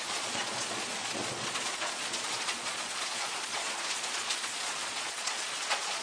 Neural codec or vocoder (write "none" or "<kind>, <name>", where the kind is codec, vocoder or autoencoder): vocoder, Vocos